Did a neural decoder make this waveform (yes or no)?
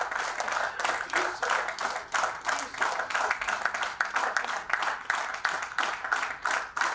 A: no